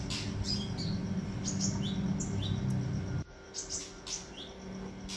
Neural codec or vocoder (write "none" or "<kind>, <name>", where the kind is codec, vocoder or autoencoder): none